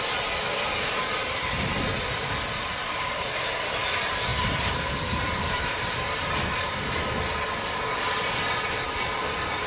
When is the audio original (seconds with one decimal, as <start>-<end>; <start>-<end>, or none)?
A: 0.0-2.8; 3.3-4.3; 7.2-9.7